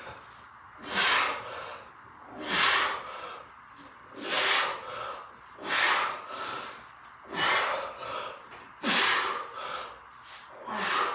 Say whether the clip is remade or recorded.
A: recorded